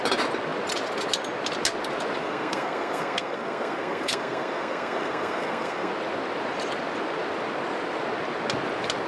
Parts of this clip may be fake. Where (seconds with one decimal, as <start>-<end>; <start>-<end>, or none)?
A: 2.2-5.9